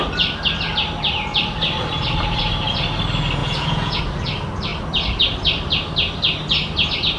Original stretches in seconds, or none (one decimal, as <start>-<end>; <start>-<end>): 0.0-3.4; 4.0-7.2